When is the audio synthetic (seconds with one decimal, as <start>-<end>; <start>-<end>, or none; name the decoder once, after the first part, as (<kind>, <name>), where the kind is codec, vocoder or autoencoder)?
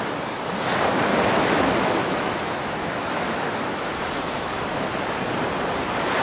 1.1-4.8 (autoencoder, DAC-VAE)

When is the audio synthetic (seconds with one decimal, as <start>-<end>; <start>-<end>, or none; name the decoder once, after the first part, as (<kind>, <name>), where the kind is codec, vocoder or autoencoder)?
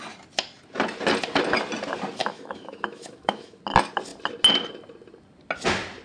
2.2-3.6 (autoencoder, DAC-VAE)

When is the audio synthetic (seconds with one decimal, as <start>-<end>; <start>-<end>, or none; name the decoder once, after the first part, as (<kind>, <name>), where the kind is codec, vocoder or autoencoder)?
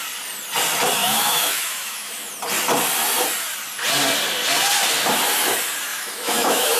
1.0-2.3 (autoencoder, DAC-VAE); 5.9-6.8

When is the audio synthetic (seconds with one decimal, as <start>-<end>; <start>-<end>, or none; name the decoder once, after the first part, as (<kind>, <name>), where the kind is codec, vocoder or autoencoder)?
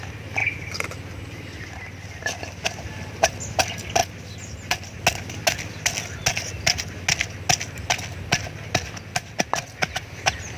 none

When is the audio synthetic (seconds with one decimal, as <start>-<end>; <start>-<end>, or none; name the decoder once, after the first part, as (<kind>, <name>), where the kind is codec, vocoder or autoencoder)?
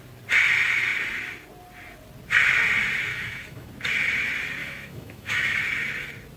3.1-3.7 (autoencoder, DAC-VAE); 4.6-5.6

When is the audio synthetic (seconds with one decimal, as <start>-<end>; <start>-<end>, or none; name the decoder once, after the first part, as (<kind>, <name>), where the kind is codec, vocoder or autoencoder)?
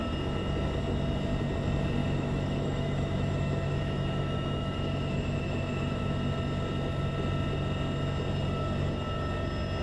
2.0-6.2 (autoencoder, DAC-VAE)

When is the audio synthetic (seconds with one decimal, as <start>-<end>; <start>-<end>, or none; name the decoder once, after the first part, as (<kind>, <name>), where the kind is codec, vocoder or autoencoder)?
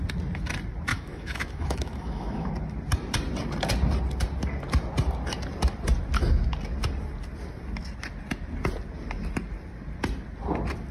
0.9-2.5 (autoencoder, DAC-VAE)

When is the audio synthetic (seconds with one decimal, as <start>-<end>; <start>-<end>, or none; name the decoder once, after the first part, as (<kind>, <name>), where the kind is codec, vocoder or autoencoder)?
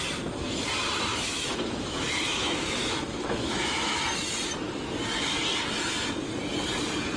1.1-4.0 (autoencoder, DAC-VAE)